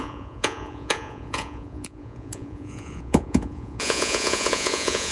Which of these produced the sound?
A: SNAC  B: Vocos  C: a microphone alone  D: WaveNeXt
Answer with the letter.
B